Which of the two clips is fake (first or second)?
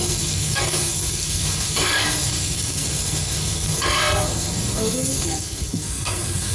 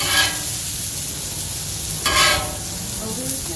first